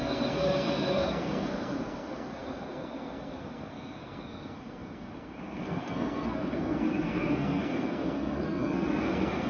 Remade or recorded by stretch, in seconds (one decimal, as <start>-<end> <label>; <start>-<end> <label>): 0.0-9.5 remade